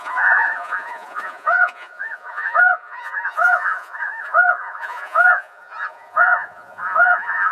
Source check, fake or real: fake